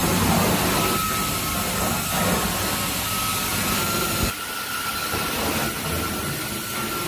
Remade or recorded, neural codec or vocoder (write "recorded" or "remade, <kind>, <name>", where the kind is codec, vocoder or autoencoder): recorded